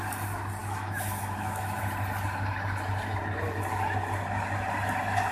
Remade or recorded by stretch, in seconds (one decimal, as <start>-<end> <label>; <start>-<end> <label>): 0.0-0.6 recorded; 0.6-1.8 remade; 1.8-5.3 recorded